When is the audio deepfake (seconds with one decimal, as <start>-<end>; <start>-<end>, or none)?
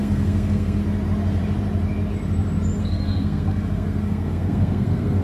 0.0-0.8; 2.8-5.2